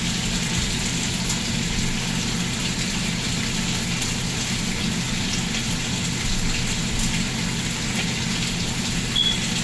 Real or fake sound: real